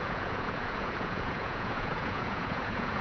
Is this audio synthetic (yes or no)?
yes